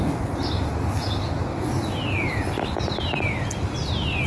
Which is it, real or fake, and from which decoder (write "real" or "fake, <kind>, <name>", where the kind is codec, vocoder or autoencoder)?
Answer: real